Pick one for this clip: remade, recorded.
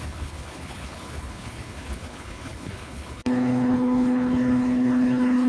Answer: remade